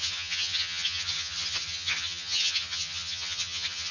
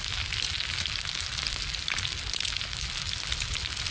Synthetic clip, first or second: first